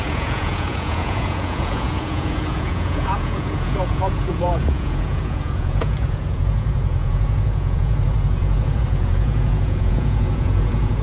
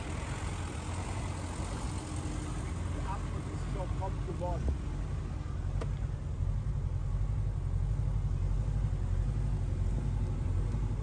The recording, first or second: second